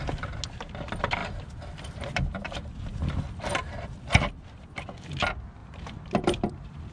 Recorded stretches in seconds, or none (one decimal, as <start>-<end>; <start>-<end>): 0.0-1.2; 4.3-5.6; 6.5-6.9